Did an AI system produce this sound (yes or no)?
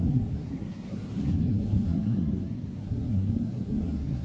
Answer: yes